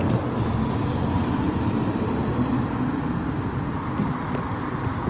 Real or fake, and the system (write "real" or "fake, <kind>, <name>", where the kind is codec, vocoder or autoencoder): real